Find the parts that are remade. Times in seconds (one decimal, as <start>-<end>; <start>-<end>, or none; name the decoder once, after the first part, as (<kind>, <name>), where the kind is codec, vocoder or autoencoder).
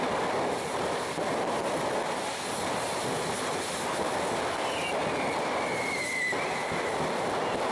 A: none